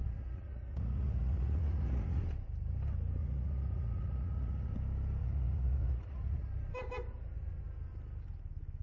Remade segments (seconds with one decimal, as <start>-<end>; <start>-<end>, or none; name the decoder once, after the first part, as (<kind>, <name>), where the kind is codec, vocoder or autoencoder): 0.0-2.2 (vocoder, Vocos); 3.2-4.7; 5.2-6.5